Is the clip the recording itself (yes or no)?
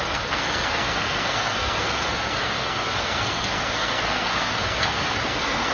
no